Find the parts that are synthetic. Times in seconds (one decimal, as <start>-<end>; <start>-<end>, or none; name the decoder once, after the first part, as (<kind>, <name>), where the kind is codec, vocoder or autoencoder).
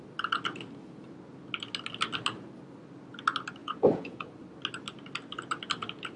3.6-4.3 (vocoder, Vocos)